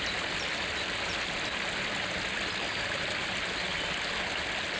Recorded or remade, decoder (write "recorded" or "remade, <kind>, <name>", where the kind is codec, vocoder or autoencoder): recorded